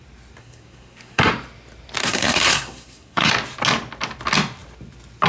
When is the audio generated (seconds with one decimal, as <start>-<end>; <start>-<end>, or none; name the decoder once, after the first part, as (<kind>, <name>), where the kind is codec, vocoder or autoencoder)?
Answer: 0.4-1.3 (codec, SNAC); 2.0-3.3